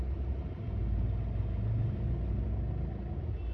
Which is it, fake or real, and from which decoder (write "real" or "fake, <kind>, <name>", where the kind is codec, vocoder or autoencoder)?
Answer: real